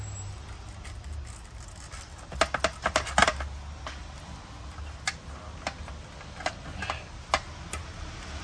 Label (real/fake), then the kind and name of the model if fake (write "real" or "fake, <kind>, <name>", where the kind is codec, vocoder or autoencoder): real